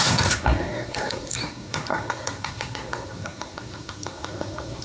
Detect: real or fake fake